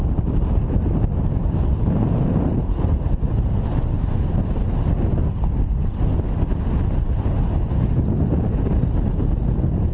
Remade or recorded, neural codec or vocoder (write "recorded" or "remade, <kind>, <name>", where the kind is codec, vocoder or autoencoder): recorded